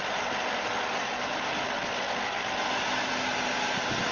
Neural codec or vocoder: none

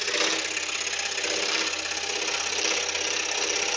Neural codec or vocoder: none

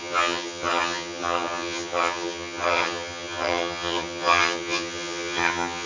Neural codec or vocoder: vocoder, HiFi-GAN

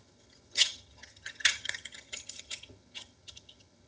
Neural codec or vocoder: vocoder, HiFi-GAN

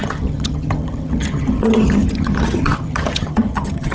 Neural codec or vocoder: vocoder, HiFi-GAN